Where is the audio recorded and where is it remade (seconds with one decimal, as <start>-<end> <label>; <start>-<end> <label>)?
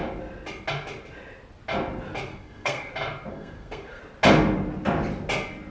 0.0-2.3 recorded; 2.3-2.9 remade; 2.9-3.3 recorded; 3.3-4.0 remade; 4.0-5.7 recorded